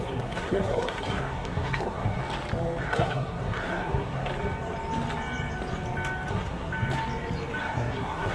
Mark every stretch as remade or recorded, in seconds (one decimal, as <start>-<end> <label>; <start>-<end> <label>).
0.0-2.2 remade; 2.2-2.8 recorded; 2.8-4.3 remade; 4.3-6.3 recorded; 6.3-6.7 remade; 6.7-7.6 recorded; 7.6-8.3 remade